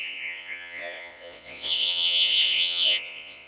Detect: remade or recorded remade